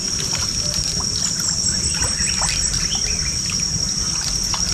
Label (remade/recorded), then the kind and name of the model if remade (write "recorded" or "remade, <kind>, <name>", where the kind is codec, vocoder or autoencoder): remade, vocoder, BigVGAN v2